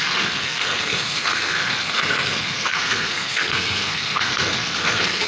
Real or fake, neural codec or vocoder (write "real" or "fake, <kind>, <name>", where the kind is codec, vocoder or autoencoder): fake, codec, SNAC